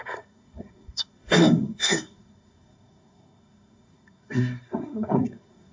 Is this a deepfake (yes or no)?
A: yes